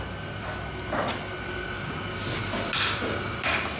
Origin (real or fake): real